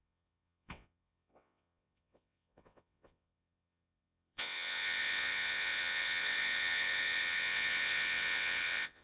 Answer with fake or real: fake